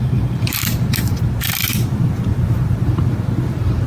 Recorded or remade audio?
remade